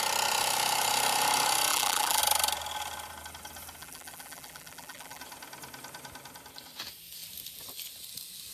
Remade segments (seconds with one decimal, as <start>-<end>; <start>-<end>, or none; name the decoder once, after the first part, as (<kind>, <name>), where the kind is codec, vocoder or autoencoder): 1.7-2.2 (vocoder, BigVGAN v2); 3.8-5.2